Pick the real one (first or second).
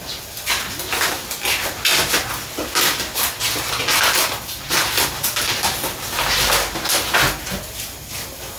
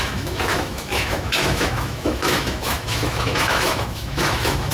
first